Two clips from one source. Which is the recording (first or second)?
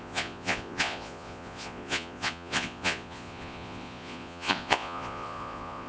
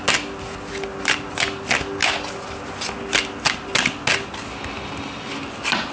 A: second